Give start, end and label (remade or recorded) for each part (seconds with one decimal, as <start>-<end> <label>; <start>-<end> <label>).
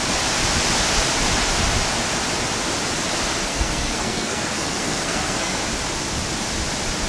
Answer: 0.0-3.4 recorded; 3.4-5.6 remade; 5.6-7.1 recorded